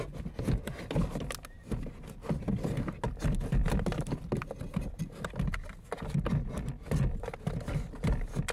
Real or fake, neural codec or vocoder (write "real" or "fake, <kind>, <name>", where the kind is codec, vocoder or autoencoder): real